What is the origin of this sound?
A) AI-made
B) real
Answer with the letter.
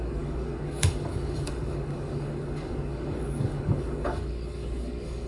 A